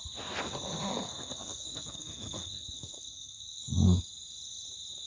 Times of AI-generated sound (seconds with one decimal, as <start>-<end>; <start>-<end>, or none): 0.9-4.0